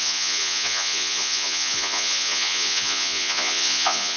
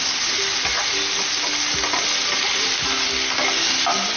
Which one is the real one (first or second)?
second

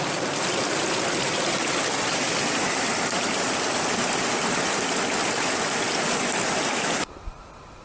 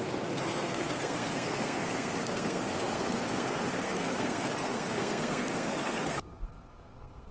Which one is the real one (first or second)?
first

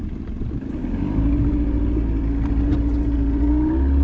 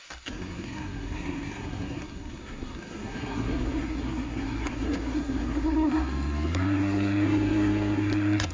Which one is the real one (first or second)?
first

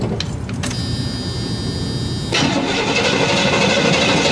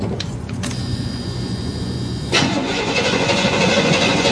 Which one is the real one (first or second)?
first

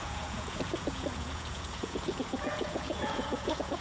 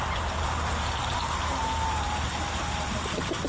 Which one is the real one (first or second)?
second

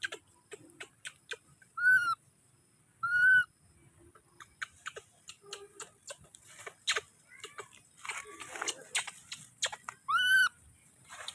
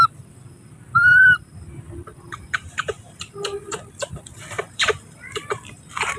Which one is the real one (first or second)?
first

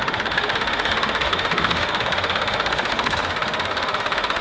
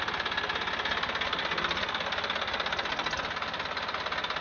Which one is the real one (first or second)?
second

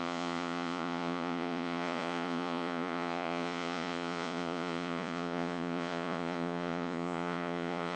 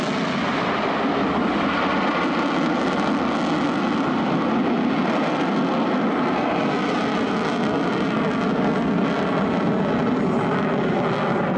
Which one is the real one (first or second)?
second